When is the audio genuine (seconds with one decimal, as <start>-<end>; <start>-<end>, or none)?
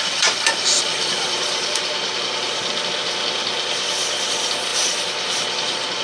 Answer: 0.0-0.9; 2.2-6.0